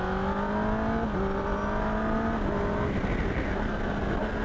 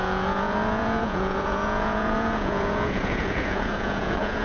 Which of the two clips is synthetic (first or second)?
second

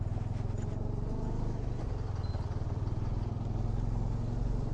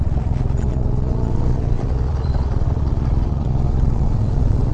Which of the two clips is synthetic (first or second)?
second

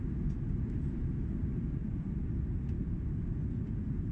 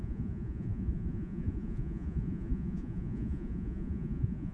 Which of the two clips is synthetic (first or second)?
second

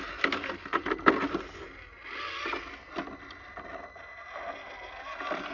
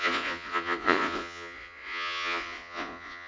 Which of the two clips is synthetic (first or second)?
second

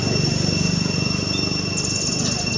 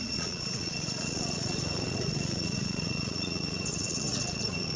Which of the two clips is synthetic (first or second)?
second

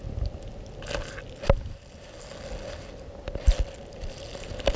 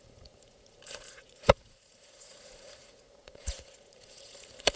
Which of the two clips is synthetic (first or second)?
second